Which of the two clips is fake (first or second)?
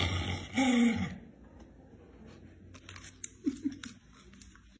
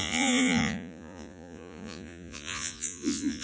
second